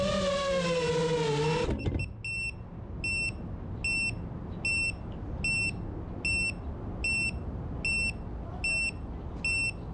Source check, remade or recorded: recorded